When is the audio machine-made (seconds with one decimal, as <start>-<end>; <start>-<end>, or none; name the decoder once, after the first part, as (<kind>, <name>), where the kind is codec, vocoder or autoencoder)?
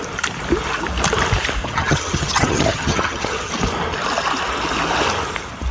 1.6-3.5 (vocoder, HiFi-GAN)